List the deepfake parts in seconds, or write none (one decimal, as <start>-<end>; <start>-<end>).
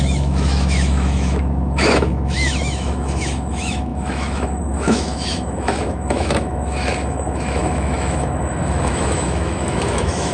0.0-10.3